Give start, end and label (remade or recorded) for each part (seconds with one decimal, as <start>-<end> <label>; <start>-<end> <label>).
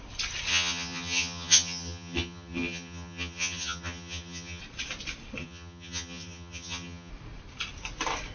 0.0-0.5 recorded; 0.5-4.6 remade; 4.6-5.4 recorded; 5.4-7.1 remade; 7.1-8.3 recorded